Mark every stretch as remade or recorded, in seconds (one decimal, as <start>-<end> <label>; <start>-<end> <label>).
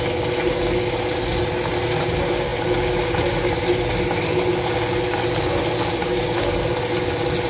0.0-6.0 recorded; 6.0-6.5 remade; 6.5-7.5 recorded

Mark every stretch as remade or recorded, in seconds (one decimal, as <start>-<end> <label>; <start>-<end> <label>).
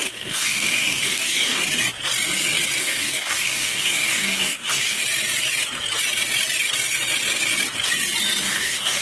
0.0-1.6 remade; 1.6-2.8 recorded; 2.8-5.0 remade; 5.0-8.4 recorded; 8.4-9.0 remade